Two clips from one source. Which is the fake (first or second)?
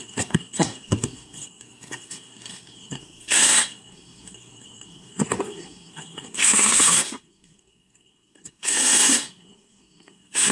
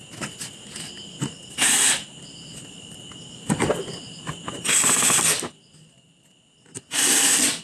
first